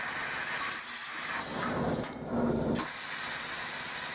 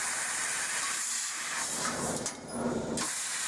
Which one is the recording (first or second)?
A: first